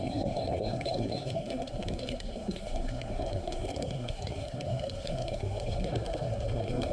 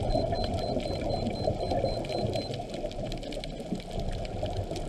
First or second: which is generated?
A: first